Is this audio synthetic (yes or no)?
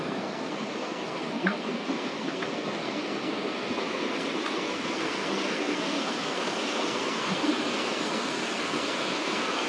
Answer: yes